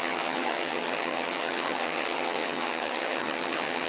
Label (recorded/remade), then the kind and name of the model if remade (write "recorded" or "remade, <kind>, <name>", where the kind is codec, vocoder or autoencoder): remade, vocoder, HiFi-GAN